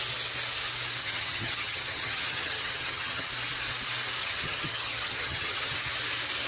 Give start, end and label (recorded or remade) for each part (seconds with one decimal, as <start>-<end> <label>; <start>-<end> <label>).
0.0-1.0 recorded; 1.0-3.3 remade; 3.3-4.2 recorded; 4.2-5.7 remade; 5.7-6.5 recorded